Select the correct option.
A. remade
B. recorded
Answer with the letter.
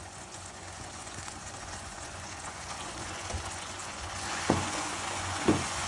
A